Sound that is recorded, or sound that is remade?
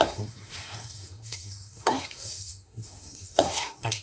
remade